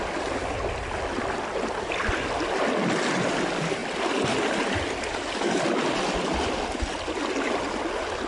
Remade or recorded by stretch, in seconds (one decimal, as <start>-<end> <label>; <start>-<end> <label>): 0.0-8.3 recorded

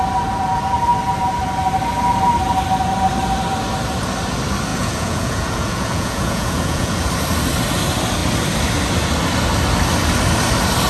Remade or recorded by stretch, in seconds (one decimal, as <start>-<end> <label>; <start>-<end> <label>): 0.0-4.7 recorded; 4.7-7.1 remade; 7.1-10.9 recorded

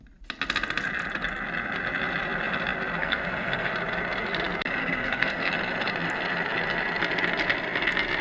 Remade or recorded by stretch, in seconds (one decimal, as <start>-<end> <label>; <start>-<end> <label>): 0.0-3.0 recorded; 3.0-3.7 remade; 3.7-4.8 recorded; 4.8-5.5 remade; 5.5-8.2 recorded

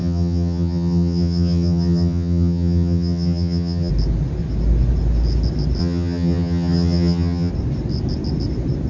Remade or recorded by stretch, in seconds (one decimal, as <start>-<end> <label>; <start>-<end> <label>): 0.0-3.9 remade; 3.9-5.8 recorded; 5.8-7.5 remade; 7.5-8.9 recorded